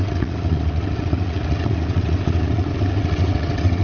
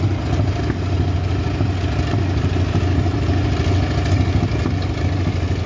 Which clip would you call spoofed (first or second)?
first